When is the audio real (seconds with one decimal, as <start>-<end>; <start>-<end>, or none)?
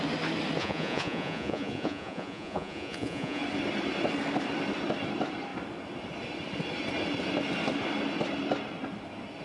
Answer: 0.0-0.6; 3.4-9.4